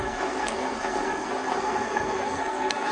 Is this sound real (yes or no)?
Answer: no